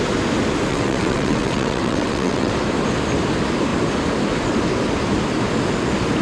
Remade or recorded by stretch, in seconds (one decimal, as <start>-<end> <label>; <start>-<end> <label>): 0.0-0.7 recorded; 0.7-2.5 remade; 2.5-6.2 recorded